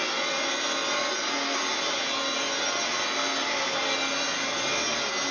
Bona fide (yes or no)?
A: yes